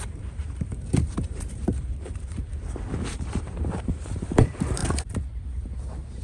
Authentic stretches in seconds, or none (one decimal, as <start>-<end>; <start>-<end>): 2.4-3.1; 4.8-5.8